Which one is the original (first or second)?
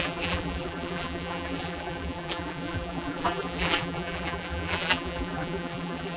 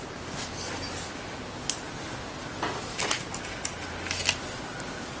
second